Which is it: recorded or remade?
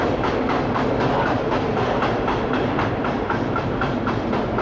recorded